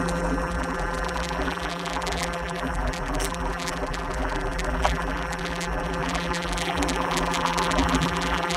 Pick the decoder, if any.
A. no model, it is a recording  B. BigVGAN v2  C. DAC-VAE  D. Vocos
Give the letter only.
B